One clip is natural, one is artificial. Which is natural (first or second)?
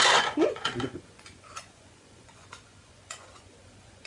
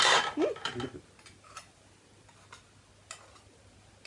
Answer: second